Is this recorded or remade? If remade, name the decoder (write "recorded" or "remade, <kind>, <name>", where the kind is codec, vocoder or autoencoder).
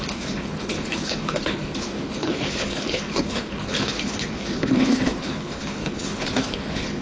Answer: remade, codec, HILCodec